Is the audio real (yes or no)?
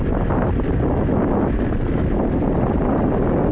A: yes